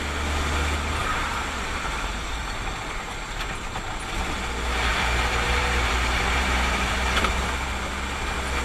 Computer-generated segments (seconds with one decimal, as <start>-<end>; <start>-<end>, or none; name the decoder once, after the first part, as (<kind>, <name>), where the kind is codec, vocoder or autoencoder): 1.0-2.4 (vocoder, BigVGAN v2); 4.9-7.3